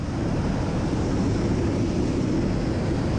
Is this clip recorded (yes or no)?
yes